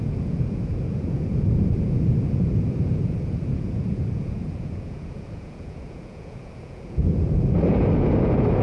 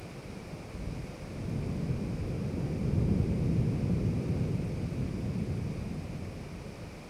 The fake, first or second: first